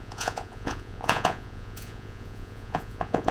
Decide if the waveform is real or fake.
fake